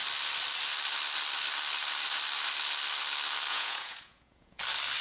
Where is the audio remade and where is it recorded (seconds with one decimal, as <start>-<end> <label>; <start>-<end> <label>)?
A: 0.0-3.5 recorded; 3.5-4.6 remade; 4.6-5.0 recorded